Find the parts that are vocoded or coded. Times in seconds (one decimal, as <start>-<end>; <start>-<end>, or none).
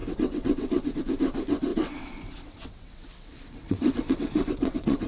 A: 0.0-1.0; 1.7-5.1